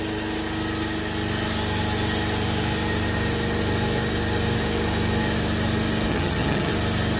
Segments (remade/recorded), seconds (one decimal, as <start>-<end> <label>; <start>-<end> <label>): 0.0-6.1 recorded; 6.1-6.7 remade; 6.7-7.2 recorded